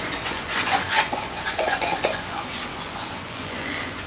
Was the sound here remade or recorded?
remade